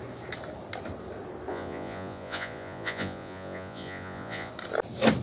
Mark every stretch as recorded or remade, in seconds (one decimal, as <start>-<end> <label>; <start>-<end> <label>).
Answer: 0.0-1.5 recorded; 1.5-4.5 remade; 4.5-5.2 recorded